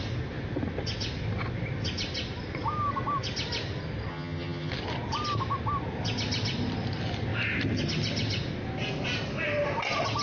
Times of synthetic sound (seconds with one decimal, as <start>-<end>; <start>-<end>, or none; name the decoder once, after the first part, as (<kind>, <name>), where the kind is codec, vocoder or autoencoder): 4.1-4.7 (vocoder, HiFi-GAN)